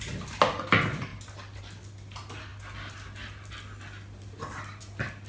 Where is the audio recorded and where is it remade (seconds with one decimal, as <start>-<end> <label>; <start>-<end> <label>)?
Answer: 0.0-5.3 recorded